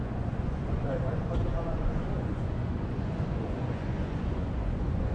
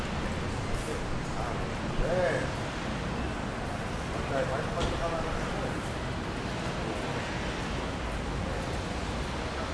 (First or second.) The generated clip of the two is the first